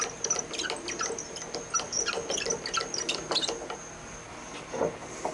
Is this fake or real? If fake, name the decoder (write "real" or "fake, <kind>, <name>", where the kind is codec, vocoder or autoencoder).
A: real